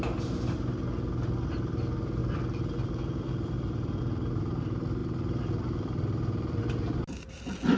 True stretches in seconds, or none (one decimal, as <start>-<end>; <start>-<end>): 0.0-2.2; 4.0-5.0; 6.6-7.8